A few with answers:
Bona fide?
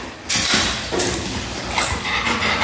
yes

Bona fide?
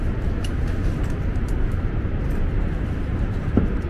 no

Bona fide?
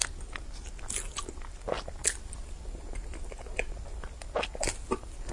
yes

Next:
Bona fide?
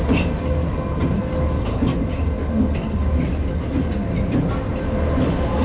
yes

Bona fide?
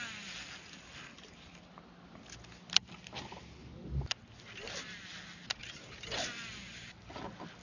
yes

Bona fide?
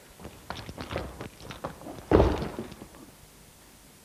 yes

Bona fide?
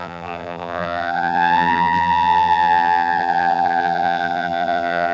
no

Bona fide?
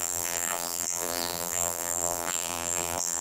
no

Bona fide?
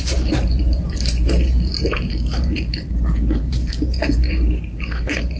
no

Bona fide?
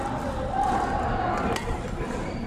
yes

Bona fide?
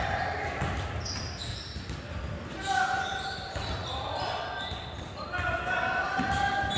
yes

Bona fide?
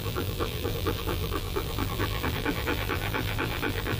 no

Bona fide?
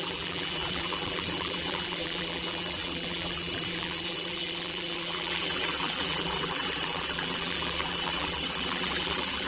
no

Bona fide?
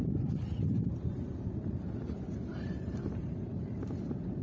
no